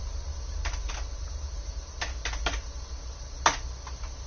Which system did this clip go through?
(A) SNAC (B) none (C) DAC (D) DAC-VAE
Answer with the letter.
B